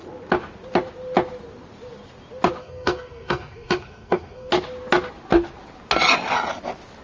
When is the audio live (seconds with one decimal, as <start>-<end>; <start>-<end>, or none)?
0.0-2.6; 4.5-7.0

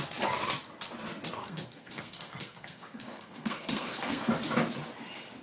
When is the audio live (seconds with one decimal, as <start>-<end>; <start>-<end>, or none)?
0.0-1.4; 4.3-5.4

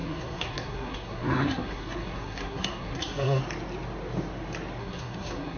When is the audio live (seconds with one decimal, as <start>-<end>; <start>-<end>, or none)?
3.4-4.8

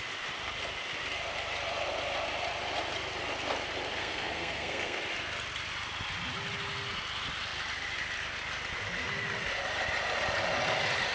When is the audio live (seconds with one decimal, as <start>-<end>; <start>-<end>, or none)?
0.0-4.0; 5.0-11.1